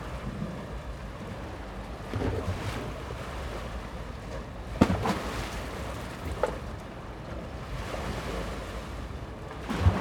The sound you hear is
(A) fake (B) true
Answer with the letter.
B